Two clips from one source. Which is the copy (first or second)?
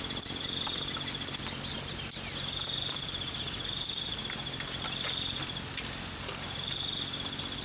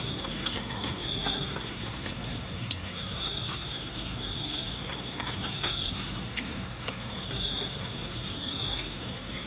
second